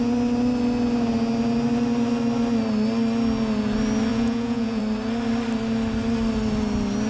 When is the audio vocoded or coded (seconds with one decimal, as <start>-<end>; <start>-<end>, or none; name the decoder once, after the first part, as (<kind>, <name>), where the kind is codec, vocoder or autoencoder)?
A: 4.1-4.8 (vocoder, Vocos)